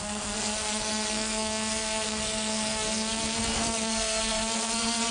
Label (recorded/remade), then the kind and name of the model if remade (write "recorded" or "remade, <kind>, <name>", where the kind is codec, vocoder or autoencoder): remade, codec, SNAC